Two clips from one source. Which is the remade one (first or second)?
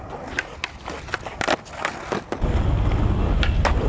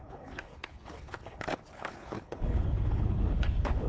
second